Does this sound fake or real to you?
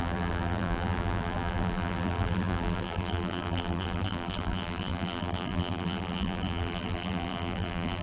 fake